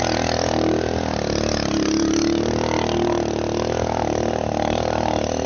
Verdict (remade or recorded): recorded